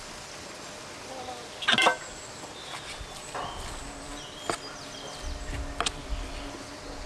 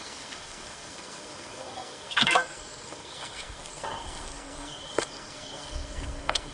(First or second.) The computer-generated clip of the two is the second